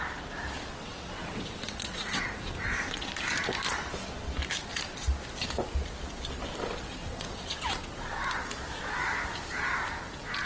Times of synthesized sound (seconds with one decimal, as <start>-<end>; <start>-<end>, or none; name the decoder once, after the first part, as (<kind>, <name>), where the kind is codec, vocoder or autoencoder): 0.7-3.1 (vocoder, WaveNeXt); 7.0-8.2